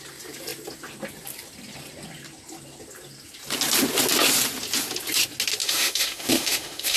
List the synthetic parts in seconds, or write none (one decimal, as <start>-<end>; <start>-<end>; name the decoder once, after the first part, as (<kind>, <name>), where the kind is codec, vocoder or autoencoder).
5.6-7.0 (autoencoder, DAC-VAE)